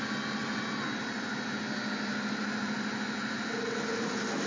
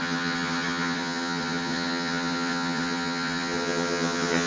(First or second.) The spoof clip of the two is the second